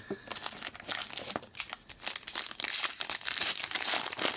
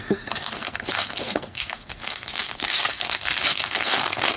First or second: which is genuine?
first